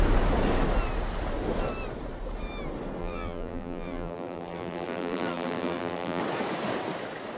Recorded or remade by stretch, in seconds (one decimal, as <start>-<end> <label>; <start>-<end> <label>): 0.0-3.0 recorded; 3.0-6.2 remade; 6.2-7.4 recorded